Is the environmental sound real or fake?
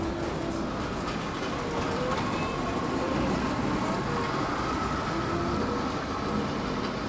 real